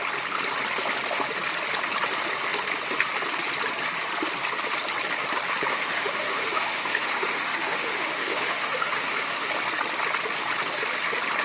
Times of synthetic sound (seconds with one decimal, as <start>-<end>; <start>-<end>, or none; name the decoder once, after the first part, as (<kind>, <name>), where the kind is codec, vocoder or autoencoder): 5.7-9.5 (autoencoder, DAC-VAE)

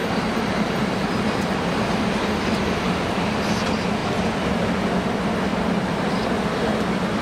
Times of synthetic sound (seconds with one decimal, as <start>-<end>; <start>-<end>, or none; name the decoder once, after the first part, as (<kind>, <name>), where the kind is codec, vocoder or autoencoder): 0.0-0.9 (vocoder, BigVGAN v2); 4.0-4.7; 5.5-6.1

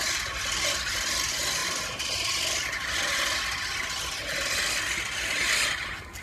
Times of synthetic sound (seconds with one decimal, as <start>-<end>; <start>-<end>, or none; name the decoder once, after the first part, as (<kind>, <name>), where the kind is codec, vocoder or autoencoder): none

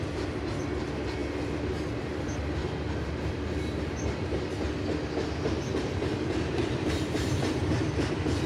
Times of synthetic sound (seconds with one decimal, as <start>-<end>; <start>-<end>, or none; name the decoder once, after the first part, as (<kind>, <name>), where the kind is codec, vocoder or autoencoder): 2.6-4.5 (vocoder, BigVGAN v2); 5.7-8.1

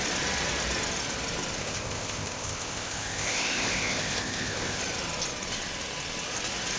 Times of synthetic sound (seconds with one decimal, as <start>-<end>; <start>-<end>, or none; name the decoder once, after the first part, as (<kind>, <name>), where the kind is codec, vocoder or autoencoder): 1.6-4.8 (codec, ZipCodec)

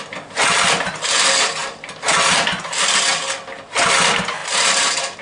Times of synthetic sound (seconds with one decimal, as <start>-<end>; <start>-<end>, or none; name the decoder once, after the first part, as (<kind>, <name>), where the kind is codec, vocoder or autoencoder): none